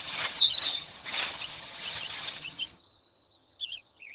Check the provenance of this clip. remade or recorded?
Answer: remade